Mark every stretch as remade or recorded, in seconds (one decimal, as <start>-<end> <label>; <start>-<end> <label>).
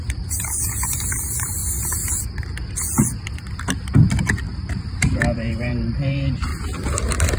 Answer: 0.0-1.6 remade; 1.6-4.7 recorded; 4.7-6.5 remade; 6.5-7.4 recorded